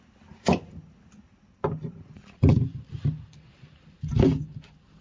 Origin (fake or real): real